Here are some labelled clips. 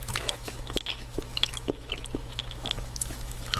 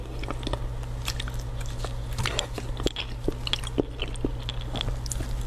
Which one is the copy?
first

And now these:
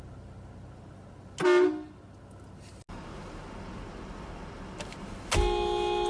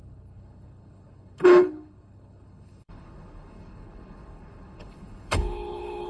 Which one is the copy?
second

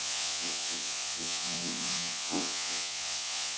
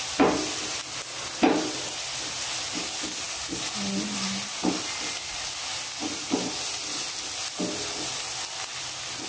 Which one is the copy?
first